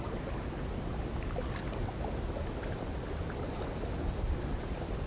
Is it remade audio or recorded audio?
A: recorded